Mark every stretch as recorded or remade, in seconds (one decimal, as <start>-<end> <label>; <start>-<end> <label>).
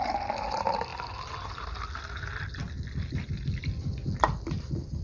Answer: 0.0-5.0 recorded